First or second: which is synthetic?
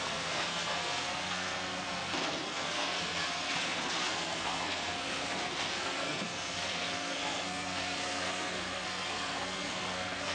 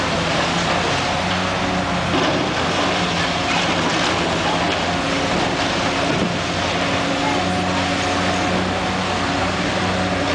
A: first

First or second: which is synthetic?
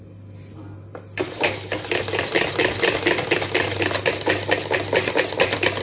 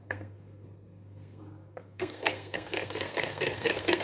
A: second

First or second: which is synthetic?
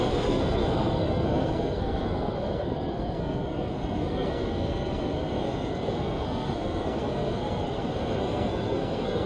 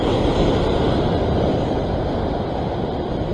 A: first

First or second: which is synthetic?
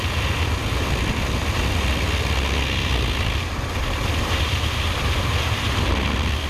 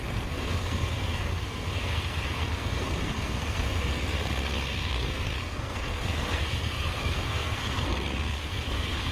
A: second